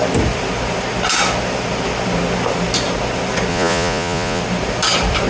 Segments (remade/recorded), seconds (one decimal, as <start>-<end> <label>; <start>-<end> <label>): 0.0-3.5 recorded; 3.5-4.4 remade; 4.4-5.3 recorded